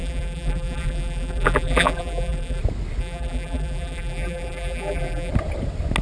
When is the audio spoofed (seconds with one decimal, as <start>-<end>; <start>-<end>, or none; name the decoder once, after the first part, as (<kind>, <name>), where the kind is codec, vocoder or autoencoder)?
0.0-2.6 (vocoder, BigVGAN v2); 3.0-5.3